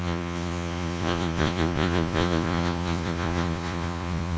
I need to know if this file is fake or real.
fake